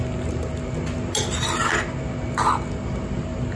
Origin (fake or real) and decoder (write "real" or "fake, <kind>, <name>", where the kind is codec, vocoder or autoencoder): real